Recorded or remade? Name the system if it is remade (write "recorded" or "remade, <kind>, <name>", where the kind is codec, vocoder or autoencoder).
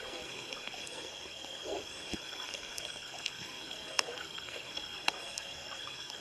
remade, codec, SNAC